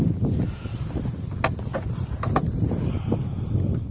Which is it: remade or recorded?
recorded